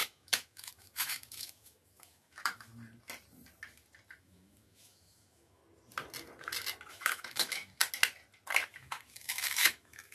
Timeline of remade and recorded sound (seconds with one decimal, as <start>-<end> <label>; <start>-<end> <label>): 0.0-2.7 remade; 2.7-4.2 recorded; 4.2-5.6 remade; 5.6-6.9 recorded; 6.9-7.8 remade; 7.8-8.7 recorded; 8.7-10.1 remade